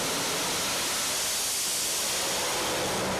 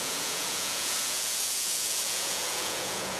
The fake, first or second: second